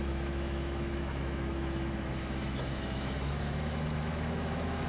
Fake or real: fake